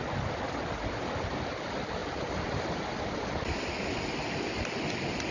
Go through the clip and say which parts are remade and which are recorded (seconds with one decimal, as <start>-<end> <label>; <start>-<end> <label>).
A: 0.0-5.3 recorded